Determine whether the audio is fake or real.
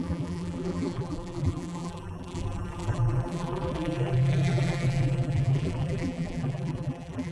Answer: fake